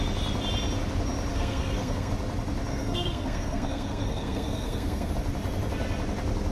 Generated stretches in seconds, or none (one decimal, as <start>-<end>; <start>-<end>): 1.3-2.1; 2.7-5.1